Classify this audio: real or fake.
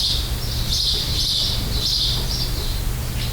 real